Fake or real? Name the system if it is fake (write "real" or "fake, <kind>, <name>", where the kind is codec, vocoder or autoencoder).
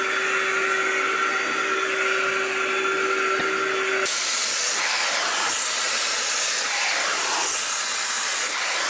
real